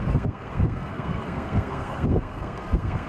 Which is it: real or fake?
fake